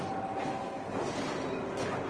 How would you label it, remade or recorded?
recorded